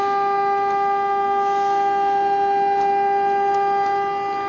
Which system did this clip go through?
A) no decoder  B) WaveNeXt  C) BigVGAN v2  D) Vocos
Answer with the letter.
A